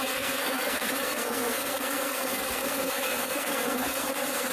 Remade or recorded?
remade